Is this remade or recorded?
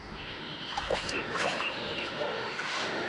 remade